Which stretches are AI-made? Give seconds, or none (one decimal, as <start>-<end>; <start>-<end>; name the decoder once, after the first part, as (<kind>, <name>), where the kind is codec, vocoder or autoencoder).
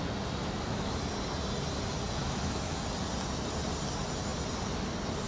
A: 0.4-1.0 (autoencoder, DAC-VAE); 2.2-2.8